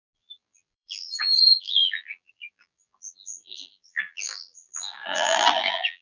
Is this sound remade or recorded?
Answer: remade